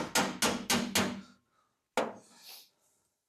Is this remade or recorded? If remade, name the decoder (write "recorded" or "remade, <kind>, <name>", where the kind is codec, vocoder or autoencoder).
recorded